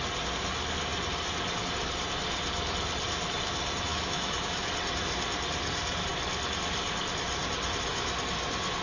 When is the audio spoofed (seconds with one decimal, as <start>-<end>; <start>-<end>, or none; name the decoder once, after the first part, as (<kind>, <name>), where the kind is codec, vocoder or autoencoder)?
3.9-4.7 (autoencoder, DAC-VAE)